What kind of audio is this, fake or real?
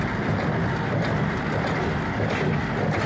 real